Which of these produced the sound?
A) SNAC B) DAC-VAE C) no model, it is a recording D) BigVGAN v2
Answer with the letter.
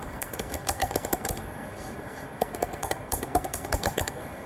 A